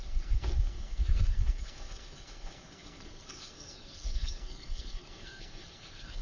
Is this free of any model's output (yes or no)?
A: no